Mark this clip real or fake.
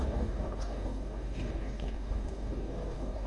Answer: fake